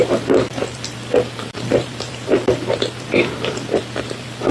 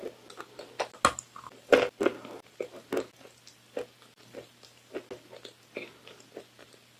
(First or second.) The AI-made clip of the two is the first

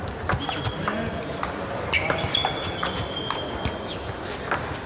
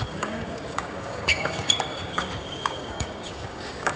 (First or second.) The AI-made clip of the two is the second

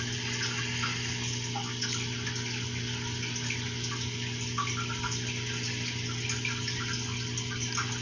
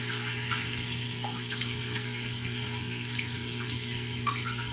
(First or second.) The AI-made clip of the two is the second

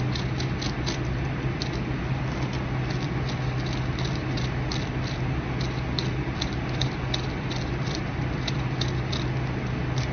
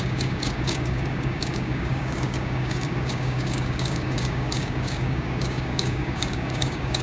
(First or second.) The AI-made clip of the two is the second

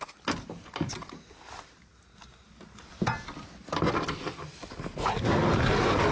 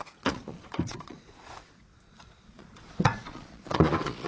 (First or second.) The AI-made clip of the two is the second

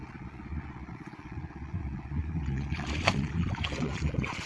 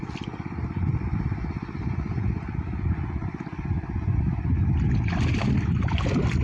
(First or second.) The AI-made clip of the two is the first